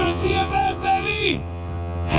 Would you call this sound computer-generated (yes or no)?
yes